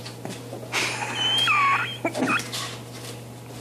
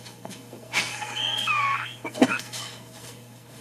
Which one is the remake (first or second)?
second